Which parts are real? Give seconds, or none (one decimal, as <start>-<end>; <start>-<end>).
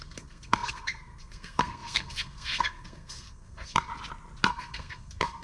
3.9-4.5